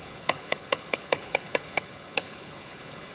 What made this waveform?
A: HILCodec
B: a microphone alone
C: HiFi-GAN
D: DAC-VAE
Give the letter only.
A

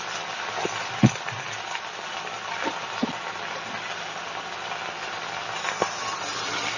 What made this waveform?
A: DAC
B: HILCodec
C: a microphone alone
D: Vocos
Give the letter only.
C